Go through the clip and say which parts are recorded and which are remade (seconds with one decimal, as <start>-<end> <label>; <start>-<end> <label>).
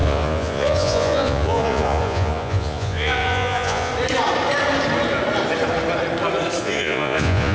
0.0-3.9 remade; 3.9-6.6 recorded; 6.6-7.5 remade